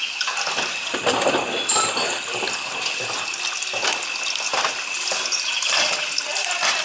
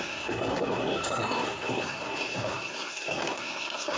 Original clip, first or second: first